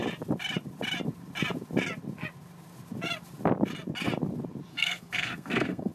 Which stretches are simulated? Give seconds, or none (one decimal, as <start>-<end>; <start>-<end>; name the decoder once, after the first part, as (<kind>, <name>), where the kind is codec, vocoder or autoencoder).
4.7-5.9 (codec, SNAC)